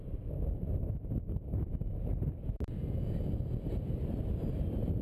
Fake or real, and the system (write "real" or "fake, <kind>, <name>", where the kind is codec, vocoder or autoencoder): real